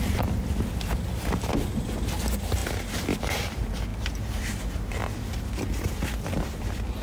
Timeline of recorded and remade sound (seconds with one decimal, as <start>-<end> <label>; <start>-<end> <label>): 0.0-3.9 recorded; 3.9-5.0 remade; 5.0-7.0 recorded